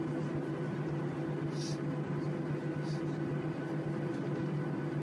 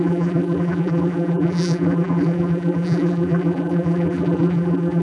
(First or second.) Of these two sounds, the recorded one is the first